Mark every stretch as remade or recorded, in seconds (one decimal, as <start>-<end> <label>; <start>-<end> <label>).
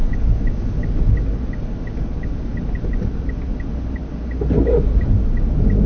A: 0.0-5.9 recorded